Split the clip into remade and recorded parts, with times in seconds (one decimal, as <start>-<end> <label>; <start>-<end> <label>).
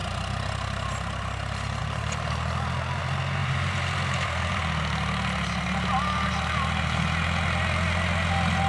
0.0-1.8 recorded; 1.8-3.0 remade; 3.0-3.4 recorded; 3.4-4.6 remade; 4.6-8.7 recorded